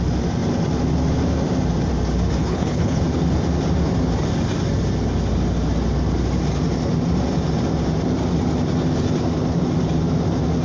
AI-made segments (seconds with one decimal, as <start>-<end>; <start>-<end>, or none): 2.4-3.0